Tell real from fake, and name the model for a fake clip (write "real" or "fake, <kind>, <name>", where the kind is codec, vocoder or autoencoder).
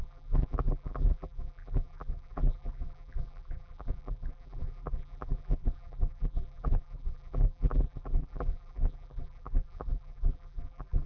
fake, vocoder, BigVGAN v2